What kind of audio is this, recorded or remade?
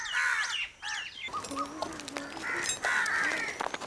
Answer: recorded